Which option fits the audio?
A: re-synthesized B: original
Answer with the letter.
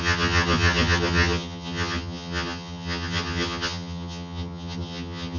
A